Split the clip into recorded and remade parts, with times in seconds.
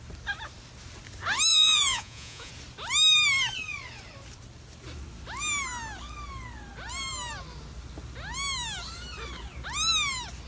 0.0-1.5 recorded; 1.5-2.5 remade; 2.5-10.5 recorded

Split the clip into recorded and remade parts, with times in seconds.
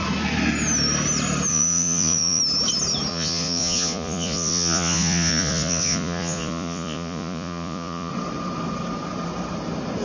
0.0-1.5 recorded; 1.5-2.4 remade; 2.4-3.1 recorded; 3.1-8.1 remade; 8.1-10.0 recorded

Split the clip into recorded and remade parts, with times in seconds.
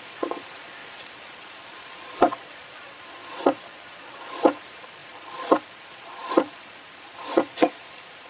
0.0-8.3 remade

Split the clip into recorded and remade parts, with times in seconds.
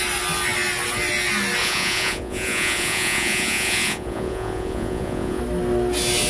0.0-1.6 recorded; 1.6-5.4 remade; 5.4-6.3 recorded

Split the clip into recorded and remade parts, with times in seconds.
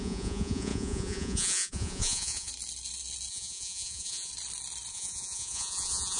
0.0-2.5 remade; 2.5-3.3 recorded; 3.3-4.3 remade; 4.3-4.9 recorded; 4.9-6.2 remade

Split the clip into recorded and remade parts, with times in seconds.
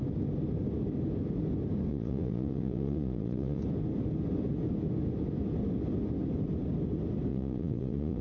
0.0-1.9 recorded; 1.9-3.6 remade; 3.6-7.3 recorded; 7.3-8.2 remade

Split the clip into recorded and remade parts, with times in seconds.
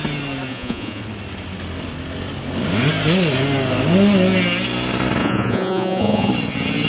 0.0-0.5 recorded; 0.5-1.0 remade; 1.0-5.2 recorded; 5.2-6.3 remade; 6.3-6.9 recorded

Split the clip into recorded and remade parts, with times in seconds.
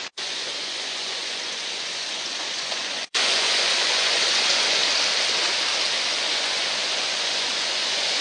0.0-4.8 remade; 4.8-6.1 recorded; 6.1-8.2 remade